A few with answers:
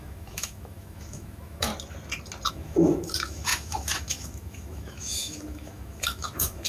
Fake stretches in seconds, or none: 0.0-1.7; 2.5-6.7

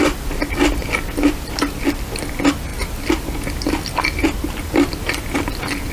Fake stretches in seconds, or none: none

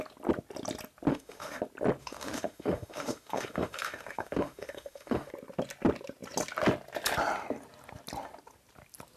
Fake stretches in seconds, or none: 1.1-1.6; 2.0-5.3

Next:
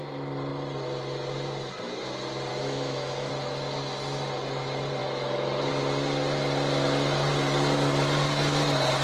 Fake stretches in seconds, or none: 2.5-3.3; 5.0-5.7